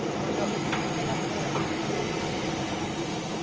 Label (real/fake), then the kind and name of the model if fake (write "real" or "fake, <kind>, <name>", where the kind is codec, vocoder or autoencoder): real